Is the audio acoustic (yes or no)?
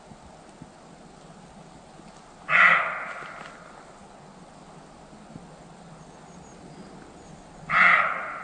yes